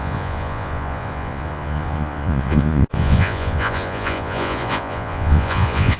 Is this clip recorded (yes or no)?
no